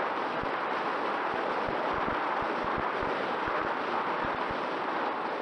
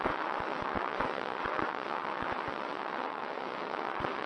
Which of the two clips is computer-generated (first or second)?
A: second